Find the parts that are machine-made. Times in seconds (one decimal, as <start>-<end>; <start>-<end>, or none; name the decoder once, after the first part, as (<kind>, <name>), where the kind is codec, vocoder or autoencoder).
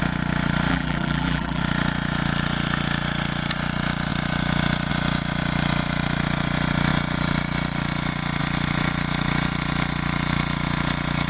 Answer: 0.7-1.6 (vocoder, BigVGAN v2)